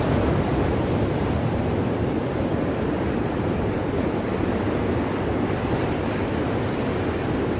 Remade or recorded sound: recorded